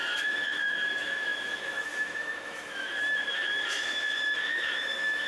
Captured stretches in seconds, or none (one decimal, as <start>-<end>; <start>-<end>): none